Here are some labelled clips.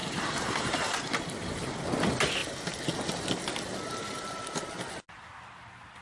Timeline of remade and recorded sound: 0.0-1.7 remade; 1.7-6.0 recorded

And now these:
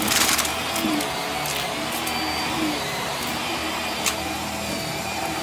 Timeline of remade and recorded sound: 0.0-0.5 remade; 0.5-2.5 recorded; 2.5-3.6 remade; 3.6-5.0 recorded; 5.0-5.4 remade

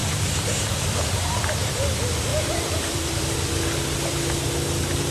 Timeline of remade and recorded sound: 0.0-1.3 remade; 1.3-2.3 recorded; 2.3-3.3 remade; 3.3-5.1 recorded

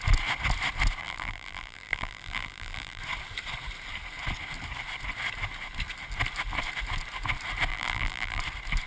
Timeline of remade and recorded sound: 0.0-1.0 recorded; 1.0-3.0 remade; 3.0-7.7 recorded; 7.7-8.4 remade; 8.4-8.9 recorded

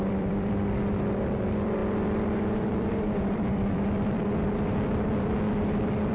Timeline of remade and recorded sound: 0.0-6.1 remade